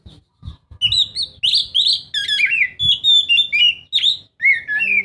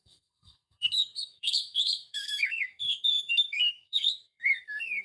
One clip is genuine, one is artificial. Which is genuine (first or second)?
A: first